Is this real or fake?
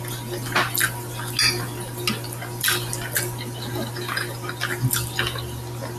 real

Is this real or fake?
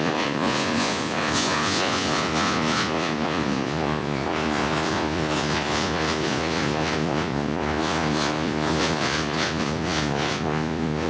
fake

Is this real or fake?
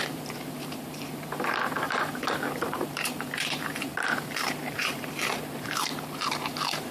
fake